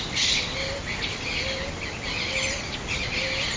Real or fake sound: real